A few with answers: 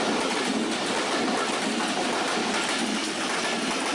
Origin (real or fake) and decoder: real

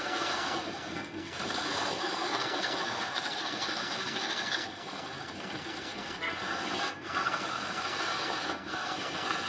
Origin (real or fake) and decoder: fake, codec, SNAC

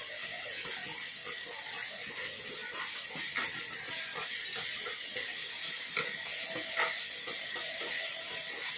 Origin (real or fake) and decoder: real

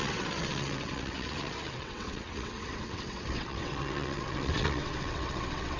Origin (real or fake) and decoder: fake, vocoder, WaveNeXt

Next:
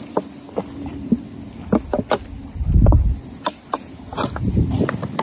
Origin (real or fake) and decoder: real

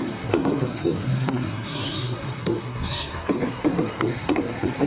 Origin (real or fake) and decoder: fake, codec, SNAC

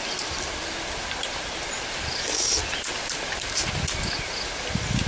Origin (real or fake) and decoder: real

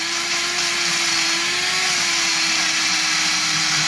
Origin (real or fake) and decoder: real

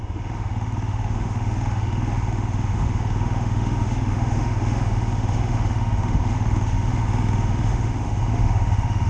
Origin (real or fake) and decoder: fake, autoencoder, DAC-VAE